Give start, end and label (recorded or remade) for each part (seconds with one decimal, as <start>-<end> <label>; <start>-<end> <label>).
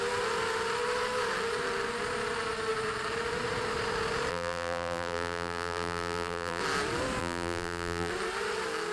0.0-4.3 recorded; 4.3-6.6 remade; 6.6-7.2 recorded; 7.2-8.1 remade; 8.1-8.9 recorded